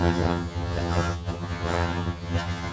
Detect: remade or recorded remade